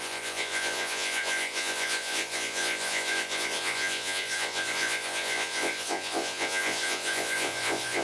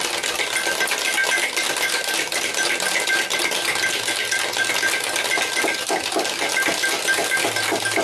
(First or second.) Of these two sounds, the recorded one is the second